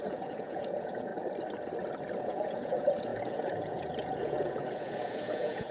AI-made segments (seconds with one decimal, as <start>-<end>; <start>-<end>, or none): 0.0-1.1; 2.2-5.7